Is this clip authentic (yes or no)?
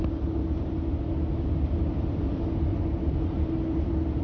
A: yes